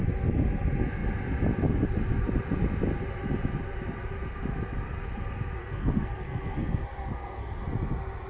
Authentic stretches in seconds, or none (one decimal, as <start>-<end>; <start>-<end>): 0.0-5.6; 7.6-8.3

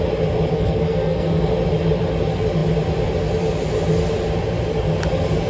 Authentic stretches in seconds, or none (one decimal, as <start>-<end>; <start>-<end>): 0.0-0.5; 1.4-5.5